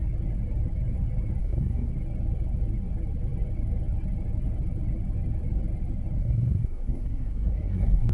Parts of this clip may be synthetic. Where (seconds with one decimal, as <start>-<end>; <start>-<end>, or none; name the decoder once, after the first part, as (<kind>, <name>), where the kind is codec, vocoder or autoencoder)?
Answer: 1.4-1.9 (codec, SNAC); 6.2-8.1